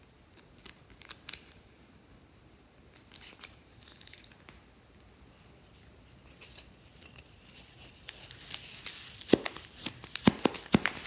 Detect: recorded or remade recorded